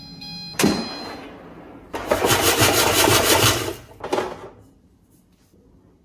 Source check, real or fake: real